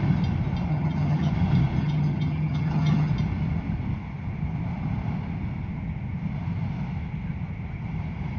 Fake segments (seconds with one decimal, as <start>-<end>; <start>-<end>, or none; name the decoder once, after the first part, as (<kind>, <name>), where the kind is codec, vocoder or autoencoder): 0.7-1.3 (vocoder, HiFi-GAN); 1.8-3.1